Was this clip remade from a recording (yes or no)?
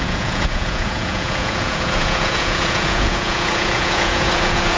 yes